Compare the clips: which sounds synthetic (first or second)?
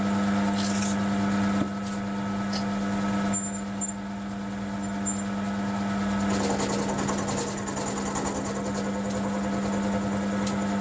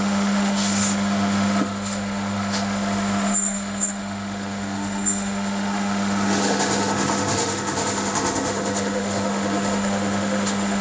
second